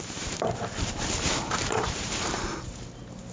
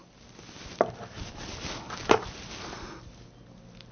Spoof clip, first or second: first